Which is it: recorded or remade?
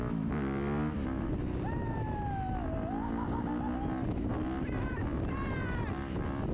recorded